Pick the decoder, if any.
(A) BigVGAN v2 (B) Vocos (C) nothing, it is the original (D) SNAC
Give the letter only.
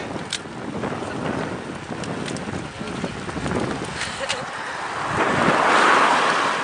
C